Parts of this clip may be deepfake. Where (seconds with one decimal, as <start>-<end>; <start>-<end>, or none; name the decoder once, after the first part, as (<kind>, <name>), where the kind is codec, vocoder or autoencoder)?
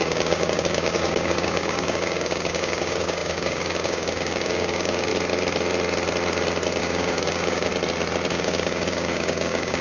0.0-5.1 (codec, DAC); 6.8-7.7; 8.3-9.8